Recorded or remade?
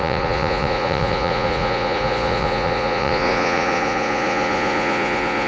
remade